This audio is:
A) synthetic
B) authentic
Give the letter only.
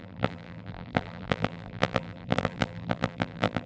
A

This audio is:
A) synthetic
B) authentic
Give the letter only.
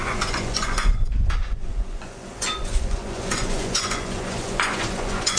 A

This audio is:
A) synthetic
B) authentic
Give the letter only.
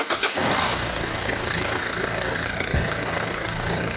A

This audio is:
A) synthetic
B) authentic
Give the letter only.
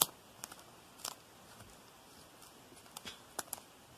B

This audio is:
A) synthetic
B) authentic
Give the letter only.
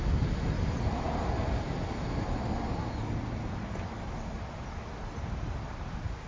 B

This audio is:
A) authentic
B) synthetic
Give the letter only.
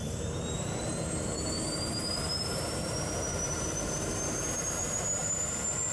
B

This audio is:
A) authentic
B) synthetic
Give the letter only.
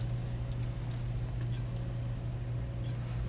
A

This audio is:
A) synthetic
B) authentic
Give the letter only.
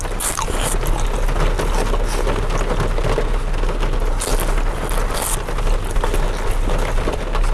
B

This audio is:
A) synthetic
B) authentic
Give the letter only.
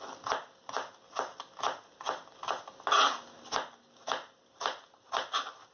B